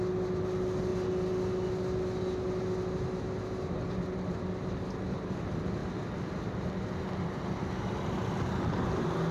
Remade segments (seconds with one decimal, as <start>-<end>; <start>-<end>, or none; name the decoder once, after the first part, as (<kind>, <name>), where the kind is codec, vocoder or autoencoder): none